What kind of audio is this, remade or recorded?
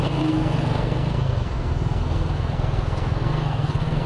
remade